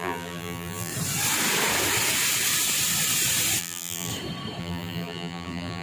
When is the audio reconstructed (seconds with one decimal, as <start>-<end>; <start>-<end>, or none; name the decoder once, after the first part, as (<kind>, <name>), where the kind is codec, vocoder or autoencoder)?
0.0-0.9 (vocoder, BigVGAN v2); 3.6-4.1; 4.6-5.8